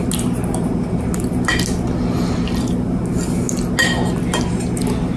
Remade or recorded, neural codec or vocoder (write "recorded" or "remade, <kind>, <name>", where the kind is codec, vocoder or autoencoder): recorded